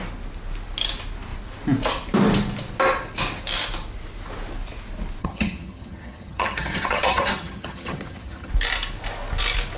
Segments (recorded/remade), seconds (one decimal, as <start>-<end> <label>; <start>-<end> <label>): 0.0-5.2 recorded; 5.2-8.5 remade; 8.5-9.8 recorded